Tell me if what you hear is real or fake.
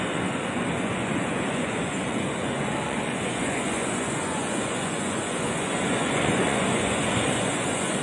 fake